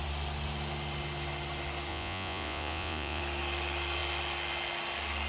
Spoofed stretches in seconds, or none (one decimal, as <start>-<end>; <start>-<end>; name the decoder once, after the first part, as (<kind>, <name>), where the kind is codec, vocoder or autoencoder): 1.9-3.2 (vocoder, Vocos)